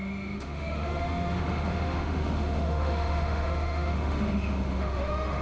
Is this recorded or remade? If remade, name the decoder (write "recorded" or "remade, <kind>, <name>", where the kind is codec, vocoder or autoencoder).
remade, autoencoder, DAC-VAE